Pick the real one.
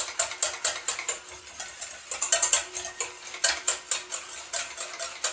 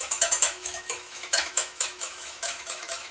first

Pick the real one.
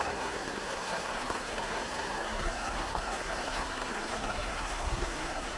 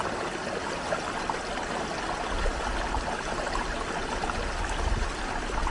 second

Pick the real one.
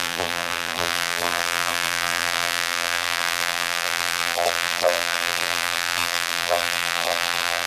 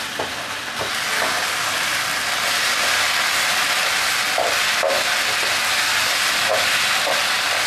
second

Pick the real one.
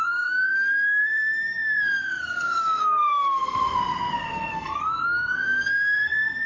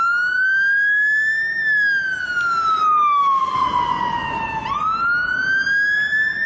second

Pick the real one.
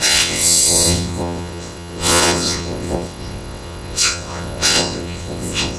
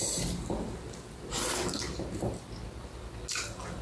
second